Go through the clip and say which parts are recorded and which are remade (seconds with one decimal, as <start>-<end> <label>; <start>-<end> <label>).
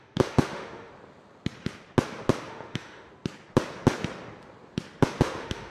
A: 0.0-0.9 remade; 0.9-2.5 recorded; 2.5-3.1 remade; 3.1-5.2 recorded; 5.2-5.7 remade